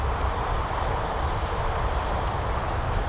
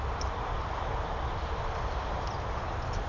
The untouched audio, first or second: second